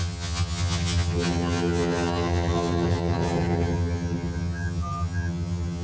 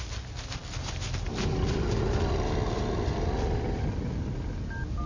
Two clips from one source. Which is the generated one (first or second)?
first